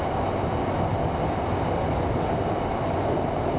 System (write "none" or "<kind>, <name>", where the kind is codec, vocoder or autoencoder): none